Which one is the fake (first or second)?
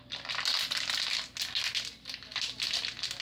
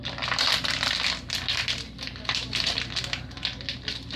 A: second